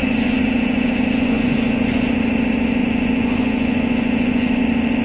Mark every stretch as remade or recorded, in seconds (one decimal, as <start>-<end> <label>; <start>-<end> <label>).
0.0-2.1 remade; 2.1-2.8 recorded; 2.8-4.6 remade; 4.6-5.0 recorded